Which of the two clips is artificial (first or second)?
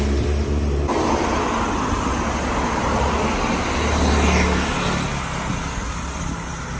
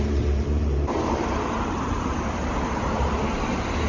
second